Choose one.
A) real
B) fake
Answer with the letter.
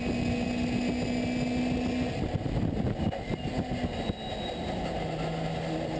A